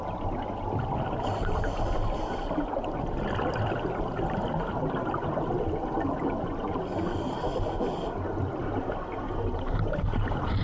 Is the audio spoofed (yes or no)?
no